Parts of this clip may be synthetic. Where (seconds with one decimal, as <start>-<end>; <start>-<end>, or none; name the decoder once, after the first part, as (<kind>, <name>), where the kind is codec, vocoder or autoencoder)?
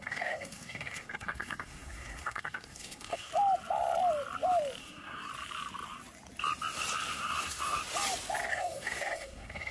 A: 0.0-3.3 (codec, SNAC); 4.8-5.3; 7.1-7.8; 8.5-9.7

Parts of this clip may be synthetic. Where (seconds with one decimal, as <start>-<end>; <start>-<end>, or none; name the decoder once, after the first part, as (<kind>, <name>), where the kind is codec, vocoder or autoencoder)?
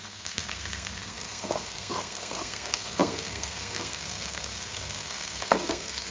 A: 0.0-6.1 (codec, SNAC)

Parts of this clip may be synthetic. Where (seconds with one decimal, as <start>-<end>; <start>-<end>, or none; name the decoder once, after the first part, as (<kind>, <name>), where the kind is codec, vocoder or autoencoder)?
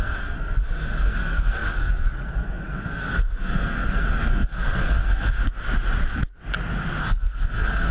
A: 0.0-5.4 (codec, SNAC); 7.0-7.9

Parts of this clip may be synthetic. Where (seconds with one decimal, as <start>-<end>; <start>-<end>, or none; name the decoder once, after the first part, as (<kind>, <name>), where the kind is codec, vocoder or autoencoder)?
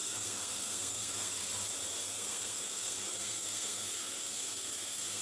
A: 0.0-1.3 (codec, SNAC); 2.0-5.2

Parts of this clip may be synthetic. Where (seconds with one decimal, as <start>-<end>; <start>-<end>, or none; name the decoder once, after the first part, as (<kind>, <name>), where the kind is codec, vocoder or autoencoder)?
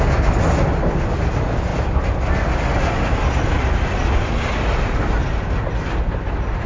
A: none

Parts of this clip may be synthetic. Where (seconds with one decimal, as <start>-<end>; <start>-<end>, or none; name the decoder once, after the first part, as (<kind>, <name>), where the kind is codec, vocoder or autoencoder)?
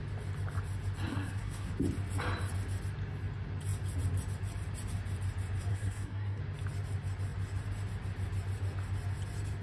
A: 1.1-1.7 (codec, SNAC); 5.7-6.4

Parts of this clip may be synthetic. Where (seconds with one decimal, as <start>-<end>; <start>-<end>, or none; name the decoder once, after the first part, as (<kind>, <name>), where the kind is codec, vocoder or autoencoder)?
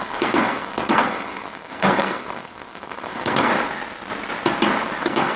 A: 0.0-3.5 (codec, SNAC); 5.0-5.4